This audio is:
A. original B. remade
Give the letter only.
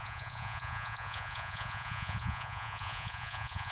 B